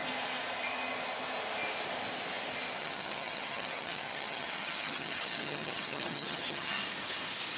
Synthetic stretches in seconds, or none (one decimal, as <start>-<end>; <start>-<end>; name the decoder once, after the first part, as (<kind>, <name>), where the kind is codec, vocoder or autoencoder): 2.8-6.8 (vocoder, HiFi-GAN)